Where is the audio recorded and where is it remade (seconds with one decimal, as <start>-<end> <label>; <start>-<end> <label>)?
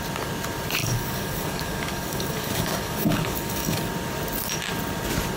0.0-0.8 recorded; 0.8-3.9 remade; 3.9-5.4 recorded